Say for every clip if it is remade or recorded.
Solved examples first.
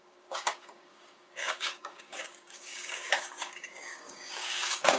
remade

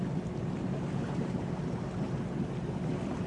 recorded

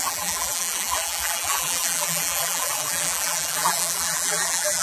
remade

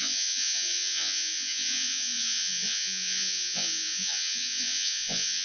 remade